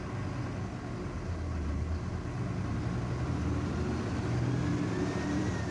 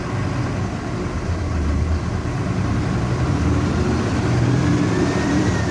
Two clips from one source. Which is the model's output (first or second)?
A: second